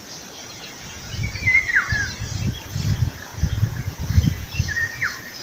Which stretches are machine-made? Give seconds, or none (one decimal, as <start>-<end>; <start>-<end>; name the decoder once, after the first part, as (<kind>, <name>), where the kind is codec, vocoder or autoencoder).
0.4-1.4 (vocoder, Vocos); 3.3-4.0; 4.4-5.4